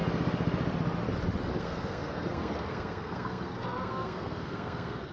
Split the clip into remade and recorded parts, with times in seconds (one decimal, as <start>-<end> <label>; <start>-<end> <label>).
0.0-1.6 recorded; 1.6-5.1 remade